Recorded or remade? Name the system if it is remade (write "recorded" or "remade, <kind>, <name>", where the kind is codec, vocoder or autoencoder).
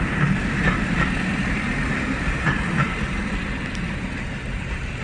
recorded